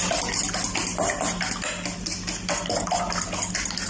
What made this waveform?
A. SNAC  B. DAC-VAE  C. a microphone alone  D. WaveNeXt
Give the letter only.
C